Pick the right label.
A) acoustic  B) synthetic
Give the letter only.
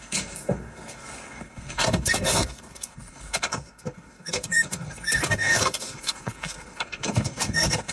B